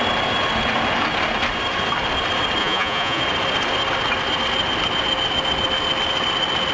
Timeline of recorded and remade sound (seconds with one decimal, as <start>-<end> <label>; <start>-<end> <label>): 0.0-2.6 recorded; 2.6-3.2 remade; 3.2-6.7 recorded